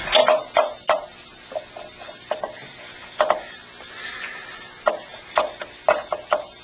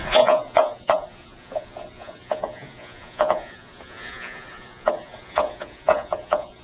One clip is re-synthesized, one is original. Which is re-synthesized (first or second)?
second